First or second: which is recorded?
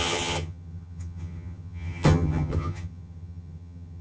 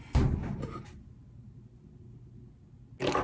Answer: second